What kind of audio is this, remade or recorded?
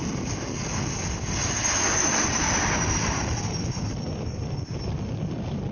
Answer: recorded